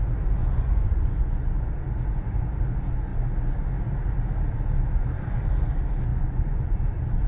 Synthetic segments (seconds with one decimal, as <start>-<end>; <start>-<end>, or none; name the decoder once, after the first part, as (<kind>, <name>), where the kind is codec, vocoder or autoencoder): 0.4-1.5 (vocoder, Vocos); 6.1-6.6